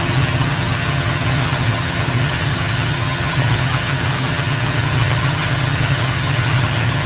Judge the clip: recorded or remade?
remade